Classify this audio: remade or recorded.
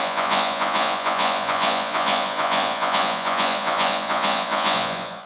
remade